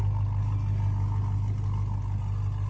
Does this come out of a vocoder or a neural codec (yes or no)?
no